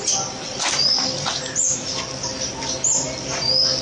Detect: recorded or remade recorded